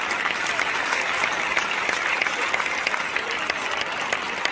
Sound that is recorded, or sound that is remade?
recorded